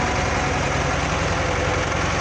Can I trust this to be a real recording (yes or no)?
yes